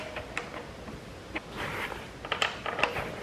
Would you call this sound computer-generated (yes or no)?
no